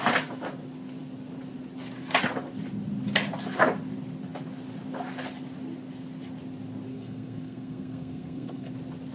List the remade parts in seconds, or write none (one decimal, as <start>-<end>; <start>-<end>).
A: 6.9-8.7